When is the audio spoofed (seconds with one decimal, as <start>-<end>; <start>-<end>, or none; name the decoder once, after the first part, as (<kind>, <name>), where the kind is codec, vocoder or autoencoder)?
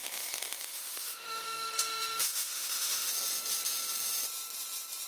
0.0-3.1 (autoencoder, DAC-VAE)